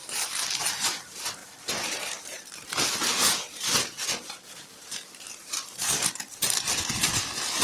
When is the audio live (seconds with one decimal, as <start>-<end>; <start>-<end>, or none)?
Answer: none